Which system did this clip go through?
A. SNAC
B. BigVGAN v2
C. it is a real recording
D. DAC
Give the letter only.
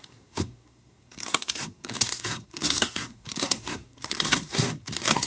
A